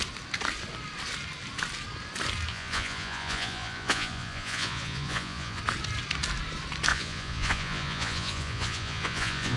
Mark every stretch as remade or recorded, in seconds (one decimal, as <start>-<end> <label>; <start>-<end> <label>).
0.0-2.5 recorded; 2.5-5.6 remade; 5.6-6.9 recorded; 6.9-9.6 remade